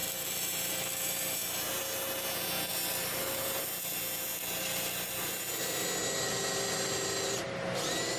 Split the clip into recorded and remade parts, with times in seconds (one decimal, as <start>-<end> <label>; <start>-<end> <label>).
0.0-1.8 remade; 1.8-2.7 recorded; 2.7-3.6 remade; 3.6-8.2 recorded